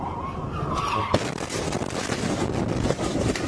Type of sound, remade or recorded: recorded